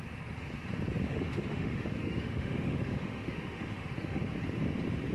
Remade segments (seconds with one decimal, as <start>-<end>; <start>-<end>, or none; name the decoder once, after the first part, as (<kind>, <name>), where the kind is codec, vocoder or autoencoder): 1.1-4.2 (autoencoder, DAC-VAE)